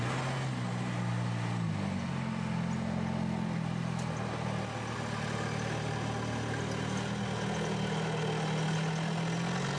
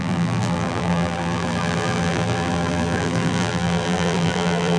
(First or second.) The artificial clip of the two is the second